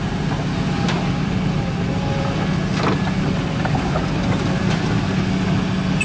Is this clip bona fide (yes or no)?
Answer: yes